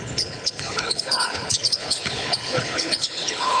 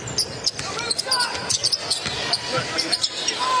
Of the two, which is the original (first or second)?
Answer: second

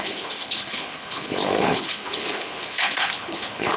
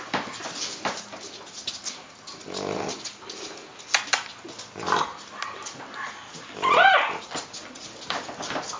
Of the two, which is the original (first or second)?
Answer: second